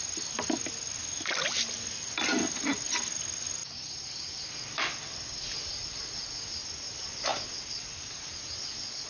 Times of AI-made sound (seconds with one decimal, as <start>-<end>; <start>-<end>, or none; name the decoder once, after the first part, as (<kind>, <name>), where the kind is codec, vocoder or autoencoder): 7.3-8.6 (vocoder, BigVGAN v2)